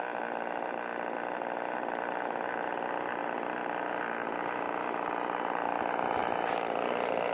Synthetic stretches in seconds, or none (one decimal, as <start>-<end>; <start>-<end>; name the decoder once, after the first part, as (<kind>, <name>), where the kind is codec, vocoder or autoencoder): none